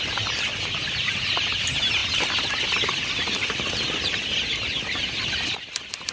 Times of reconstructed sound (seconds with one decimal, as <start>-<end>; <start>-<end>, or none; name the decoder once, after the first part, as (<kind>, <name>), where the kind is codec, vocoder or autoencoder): none